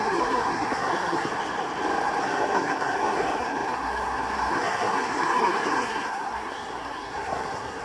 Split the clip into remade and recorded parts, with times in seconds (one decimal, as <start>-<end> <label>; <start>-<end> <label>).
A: 0.0-1.3 remade; 1.3-2.2 recorded; 2.2-7.8 remade